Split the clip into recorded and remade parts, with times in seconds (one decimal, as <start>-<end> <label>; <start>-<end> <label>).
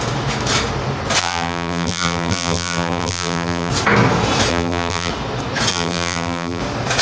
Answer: 0.0-1.2 recorded; 1.2-3.7 remade; 3.7-4.5 recorded; 4.5-5.1 remade; 5.1-5.7 recorded; 5.7-6.6 remade; 6.6-7.0 recorded